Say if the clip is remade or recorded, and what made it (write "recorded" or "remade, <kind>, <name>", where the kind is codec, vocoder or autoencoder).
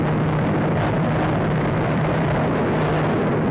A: recorded